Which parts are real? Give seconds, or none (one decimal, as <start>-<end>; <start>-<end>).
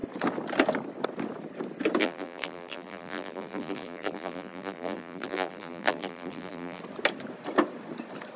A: 0.0-2.0; 6.8-8.4